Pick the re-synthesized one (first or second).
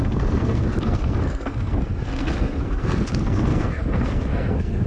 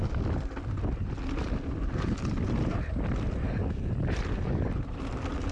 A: first